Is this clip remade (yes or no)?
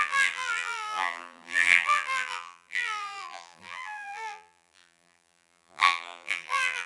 yes